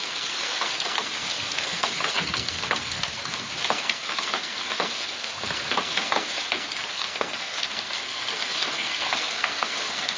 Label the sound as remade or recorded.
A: remade